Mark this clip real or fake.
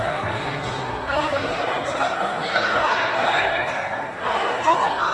fake